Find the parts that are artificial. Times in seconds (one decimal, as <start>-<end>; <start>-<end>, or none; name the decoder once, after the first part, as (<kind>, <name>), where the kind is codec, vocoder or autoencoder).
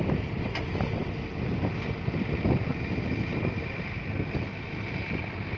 none